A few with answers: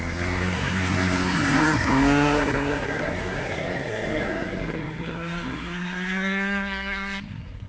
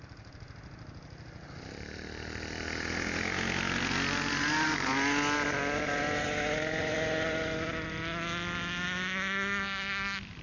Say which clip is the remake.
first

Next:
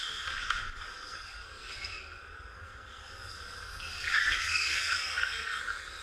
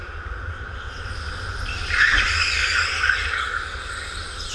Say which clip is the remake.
first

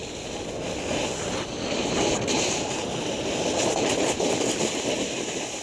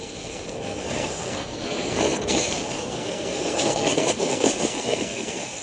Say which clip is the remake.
second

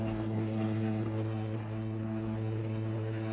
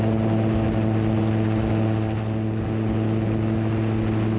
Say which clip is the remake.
first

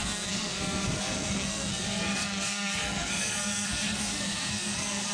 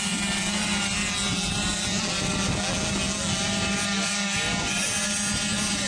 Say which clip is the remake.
first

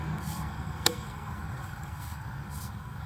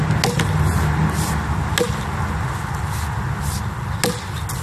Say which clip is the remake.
first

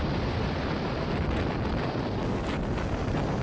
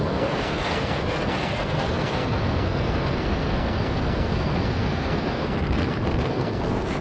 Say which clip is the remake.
second